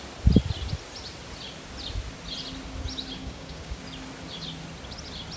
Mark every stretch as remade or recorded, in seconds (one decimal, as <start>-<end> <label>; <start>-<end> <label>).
0.0-3.2 recorded; 3.2-3.8 remade; 3.8-5.4 recorded